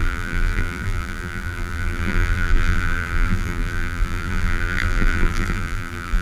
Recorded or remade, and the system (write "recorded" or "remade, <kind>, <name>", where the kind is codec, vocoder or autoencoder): remade, vocoder, BigVGAN v2